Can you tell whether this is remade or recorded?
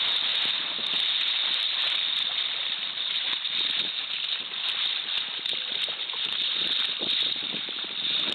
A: recorded